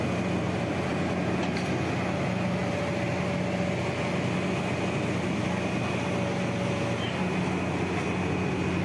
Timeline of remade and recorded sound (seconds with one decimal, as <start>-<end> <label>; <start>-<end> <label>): 0.0-8.8 recorded